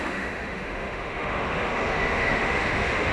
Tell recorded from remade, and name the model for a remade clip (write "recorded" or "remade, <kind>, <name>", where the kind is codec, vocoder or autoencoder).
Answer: remade, autoencoder, DAC-VAE